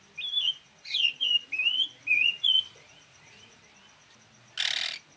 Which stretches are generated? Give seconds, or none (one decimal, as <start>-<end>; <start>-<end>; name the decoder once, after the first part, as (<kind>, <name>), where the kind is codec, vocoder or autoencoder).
0.6-1.2 (vocoder, Vocos); 2.1-3.6